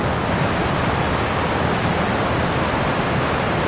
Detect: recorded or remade recorded